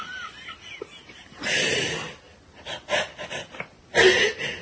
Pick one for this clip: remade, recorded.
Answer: recorded